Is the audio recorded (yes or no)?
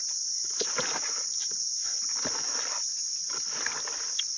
yes